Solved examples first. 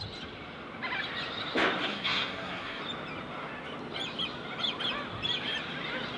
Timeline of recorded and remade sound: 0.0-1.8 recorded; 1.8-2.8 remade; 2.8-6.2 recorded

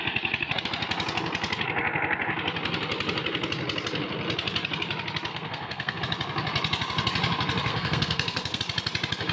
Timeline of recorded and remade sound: 0.0-5.3 recorded; 5.3-6.0 remade; 6.0-7.7 recorded; 7.7-8.6 remade; 8.6-9.3 recorded

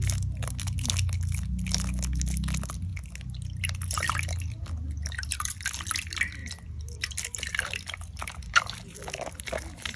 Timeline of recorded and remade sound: 0.0-10.0 recorded